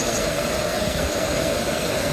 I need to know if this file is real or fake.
fake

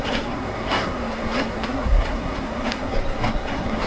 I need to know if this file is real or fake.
fake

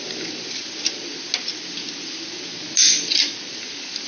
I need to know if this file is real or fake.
real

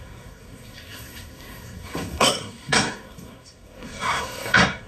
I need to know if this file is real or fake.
fake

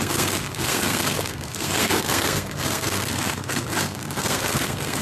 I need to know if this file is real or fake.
fake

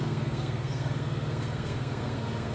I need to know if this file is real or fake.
fake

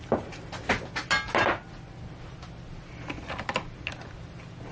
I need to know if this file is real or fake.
real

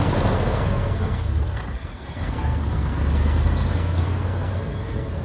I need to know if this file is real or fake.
fake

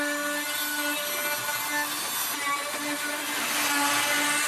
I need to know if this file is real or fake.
real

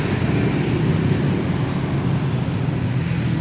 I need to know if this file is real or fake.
real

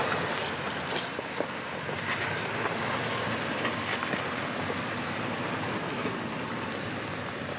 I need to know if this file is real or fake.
real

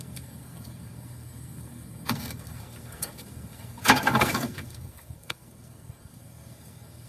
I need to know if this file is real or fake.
fake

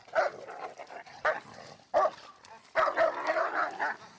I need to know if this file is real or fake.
real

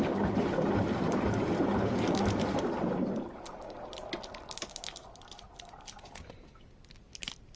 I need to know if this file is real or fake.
real